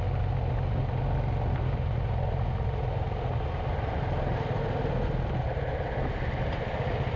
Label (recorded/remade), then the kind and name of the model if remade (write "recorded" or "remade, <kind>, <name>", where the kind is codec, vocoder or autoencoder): recorded